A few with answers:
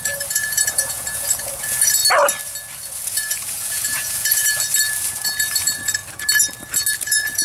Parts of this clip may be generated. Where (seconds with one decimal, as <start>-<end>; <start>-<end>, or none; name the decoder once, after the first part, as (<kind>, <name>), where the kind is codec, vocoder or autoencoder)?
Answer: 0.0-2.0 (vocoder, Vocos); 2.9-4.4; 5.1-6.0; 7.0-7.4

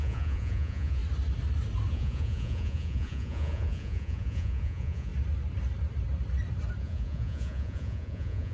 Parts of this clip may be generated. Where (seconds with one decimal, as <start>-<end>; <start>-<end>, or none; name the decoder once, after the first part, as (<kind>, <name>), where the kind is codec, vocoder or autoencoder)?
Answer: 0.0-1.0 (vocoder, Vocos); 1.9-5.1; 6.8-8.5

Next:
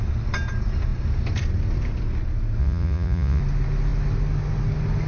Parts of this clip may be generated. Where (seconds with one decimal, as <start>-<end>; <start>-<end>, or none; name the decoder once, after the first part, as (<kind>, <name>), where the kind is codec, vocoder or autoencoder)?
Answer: 2.6-3.4 (vocoder, Vocos)